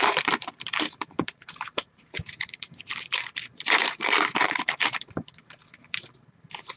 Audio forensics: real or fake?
fake